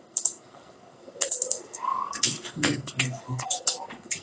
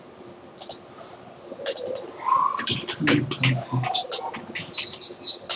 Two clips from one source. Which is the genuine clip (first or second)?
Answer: second